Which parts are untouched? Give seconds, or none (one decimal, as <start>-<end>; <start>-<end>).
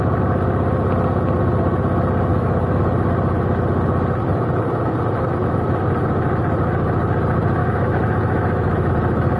0.0-2.3; 2.8-7.6; 8.9-9.4